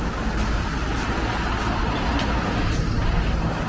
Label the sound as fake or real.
real